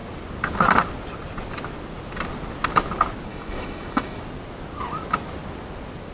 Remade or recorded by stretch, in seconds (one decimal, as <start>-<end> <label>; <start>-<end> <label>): 0.0-3.3 recorded; 3.3-4.2 remade; 4.2-6.1 recorded